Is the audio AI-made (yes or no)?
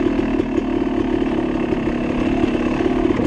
no